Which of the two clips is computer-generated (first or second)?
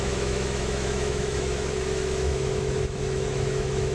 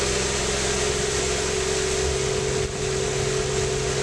first